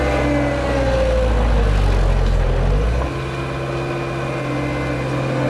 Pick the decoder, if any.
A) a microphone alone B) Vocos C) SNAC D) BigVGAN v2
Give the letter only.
A